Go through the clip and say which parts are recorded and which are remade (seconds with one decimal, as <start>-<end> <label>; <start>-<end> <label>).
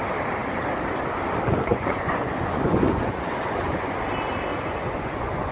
0.0-1.7 recorded; 1.7-4.0 remade; 4.0-4.5 recorded; 4.5-5.5 remade